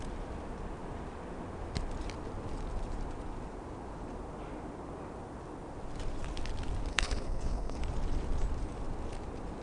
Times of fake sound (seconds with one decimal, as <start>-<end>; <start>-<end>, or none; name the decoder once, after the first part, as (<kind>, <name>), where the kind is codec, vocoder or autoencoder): 6.9-7.8 (codec, SNAC)